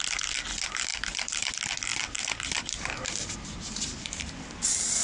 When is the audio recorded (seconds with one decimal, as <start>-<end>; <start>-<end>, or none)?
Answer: 0.0-0.9; 1.5-1.9; 4.4-5.0

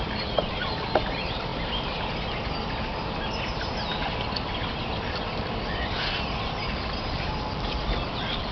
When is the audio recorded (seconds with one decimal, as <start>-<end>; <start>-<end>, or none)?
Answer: 1.5-6.6

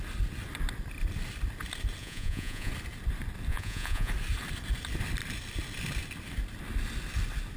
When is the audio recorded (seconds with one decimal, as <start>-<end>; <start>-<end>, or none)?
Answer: 0.0-2.0; 2.7-3.5; 4.1-7.6

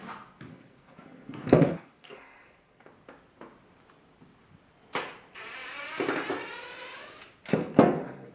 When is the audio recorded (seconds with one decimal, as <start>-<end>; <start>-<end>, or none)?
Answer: 0.0-0.5; 2.9-7.5

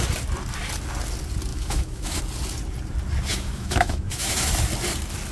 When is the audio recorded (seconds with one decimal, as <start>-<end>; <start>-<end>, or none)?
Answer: 0.0-1.5; 2.2-3.3; 4.5-5.3